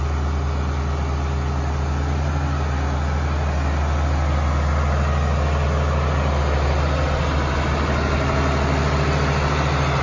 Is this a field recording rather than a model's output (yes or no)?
yes